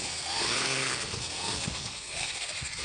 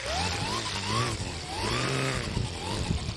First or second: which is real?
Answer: second